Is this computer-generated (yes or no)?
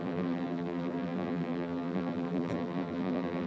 yes